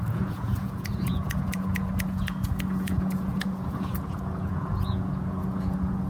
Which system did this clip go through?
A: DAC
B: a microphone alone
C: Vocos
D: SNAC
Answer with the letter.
C